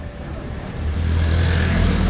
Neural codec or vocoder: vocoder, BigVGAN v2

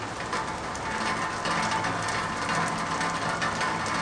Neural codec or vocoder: none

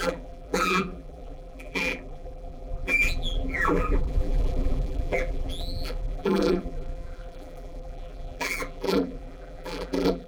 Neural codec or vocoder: vocoder, BigVGAN v2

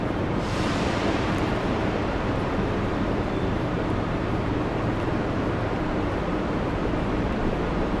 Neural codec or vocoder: vocoder, BigVGAN v2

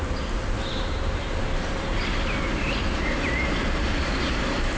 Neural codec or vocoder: vocoder, BigVGAN v2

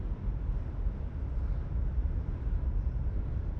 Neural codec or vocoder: none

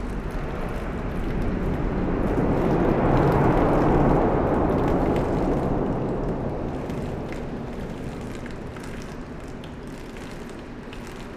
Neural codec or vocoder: none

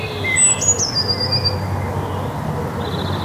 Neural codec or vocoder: none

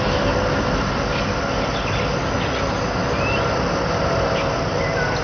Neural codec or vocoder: none